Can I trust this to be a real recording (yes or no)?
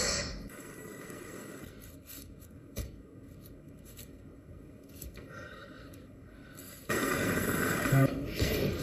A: no